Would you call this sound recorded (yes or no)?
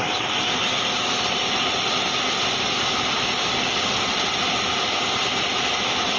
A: yes